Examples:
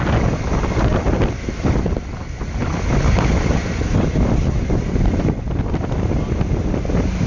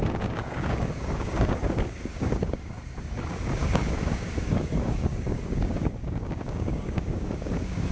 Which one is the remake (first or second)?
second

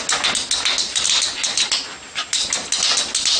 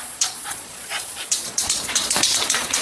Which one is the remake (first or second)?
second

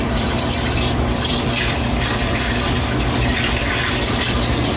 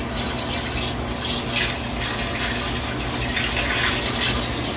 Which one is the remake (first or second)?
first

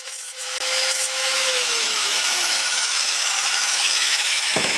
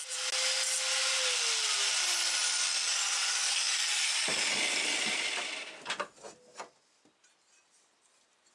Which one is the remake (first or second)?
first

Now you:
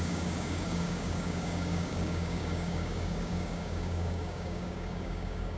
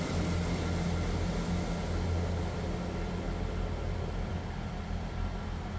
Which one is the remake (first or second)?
first